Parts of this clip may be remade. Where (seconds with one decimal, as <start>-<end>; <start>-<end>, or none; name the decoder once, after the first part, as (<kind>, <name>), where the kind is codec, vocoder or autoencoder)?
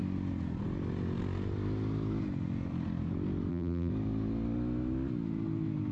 3.5-3.9 (vocoder, BigVGAN v2)